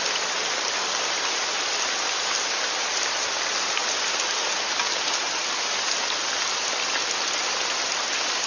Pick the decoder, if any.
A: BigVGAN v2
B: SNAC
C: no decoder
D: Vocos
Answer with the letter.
C